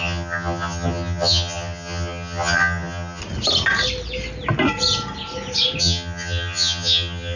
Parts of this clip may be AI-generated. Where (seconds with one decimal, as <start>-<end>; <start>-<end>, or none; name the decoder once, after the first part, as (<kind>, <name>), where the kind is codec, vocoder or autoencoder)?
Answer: 0.0-3.2 (vocoder, HiFi-GAN); 5.8-7.4